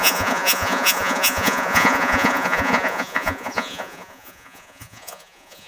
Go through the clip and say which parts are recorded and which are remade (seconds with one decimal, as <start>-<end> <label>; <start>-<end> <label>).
0.0-5.7 remade

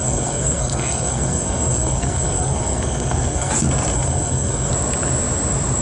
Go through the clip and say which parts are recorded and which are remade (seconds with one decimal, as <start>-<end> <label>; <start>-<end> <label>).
0.0-3.5 remade; 3.5-3.9 recorded; 3.9-4.7 remade; 4.7-5.8 recorded

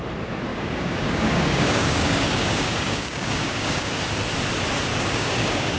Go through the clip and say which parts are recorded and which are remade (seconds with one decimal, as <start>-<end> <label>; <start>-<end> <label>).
0.0-0.5 recorded; 0.5-4.0 remade; 4.0-4.9 recorded; 4.9-5.8 remade

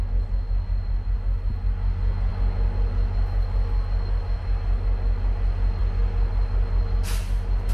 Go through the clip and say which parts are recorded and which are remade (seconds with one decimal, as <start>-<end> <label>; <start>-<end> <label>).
0.0-7.7 recorded